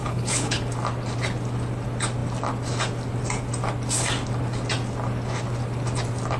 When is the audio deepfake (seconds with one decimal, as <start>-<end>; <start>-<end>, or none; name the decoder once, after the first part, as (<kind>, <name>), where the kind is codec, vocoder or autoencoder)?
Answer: 0.0-0.6 (codec, HILCodec)